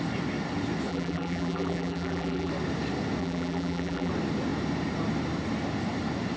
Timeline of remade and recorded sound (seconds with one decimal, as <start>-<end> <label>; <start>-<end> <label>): 0.0-0.9 recorded; 0.9-2.5 remade; 2.5-3.2 recorded; 3.2-4.1 remade; 4.1-6.4 recorded